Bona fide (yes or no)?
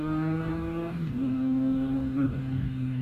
no